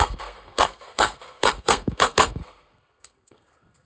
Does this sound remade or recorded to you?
remade